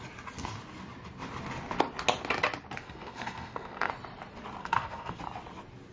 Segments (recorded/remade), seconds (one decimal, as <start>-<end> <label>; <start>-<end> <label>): 0.0-2.8 recorded; 2.8-3.9 remade; 3.9-4.6 recorded; 4.6-5.2 remade; 5.2-5.9 recorded